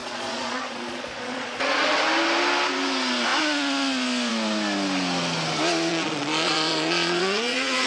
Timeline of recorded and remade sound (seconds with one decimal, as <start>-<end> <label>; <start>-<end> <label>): 0.0-2.0 remade; 2.0-5.9 recorded; 5.9-7.9 remade